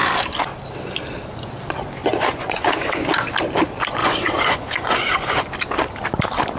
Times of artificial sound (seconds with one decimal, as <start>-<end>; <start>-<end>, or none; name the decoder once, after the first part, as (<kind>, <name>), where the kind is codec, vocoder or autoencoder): 2.0-2.9 (vocoder, Vocos); 4.0-5.5

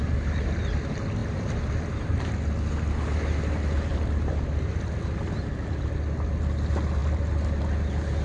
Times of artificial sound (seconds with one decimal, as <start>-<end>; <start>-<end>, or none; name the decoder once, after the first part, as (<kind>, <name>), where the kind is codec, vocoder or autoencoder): 1.2-2.2 (vocoder, BigVGAN v2); 3.9-4.7; 7.0-7.6

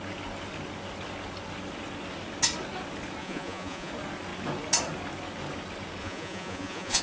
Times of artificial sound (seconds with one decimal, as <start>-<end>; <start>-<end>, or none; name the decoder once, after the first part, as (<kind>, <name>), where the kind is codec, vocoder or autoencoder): 3.2-3.9 (vocoder, Vocos); 6.0-7.0